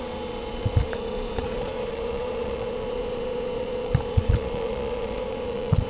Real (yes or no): no